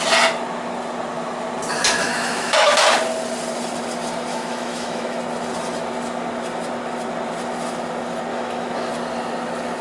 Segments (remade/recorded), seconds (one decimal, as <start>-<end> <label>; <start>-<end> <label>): 0.0-2.0 recorded; 2.0-2.7 remade; 2.7-4.3 recorded; 4.3-5.2 remade; 5.2-8.3 recorded; 8.3-8.9 remade; 8.9-9.8 recorded